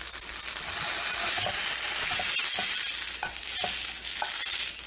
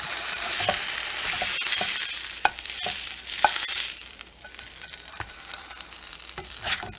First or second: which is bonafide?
first